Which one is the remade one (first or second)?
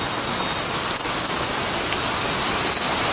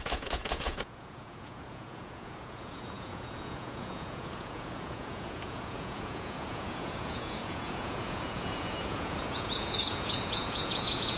second